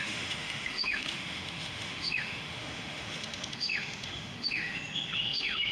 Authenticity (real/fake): fake